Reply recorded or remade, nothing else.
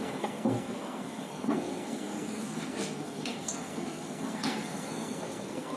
remade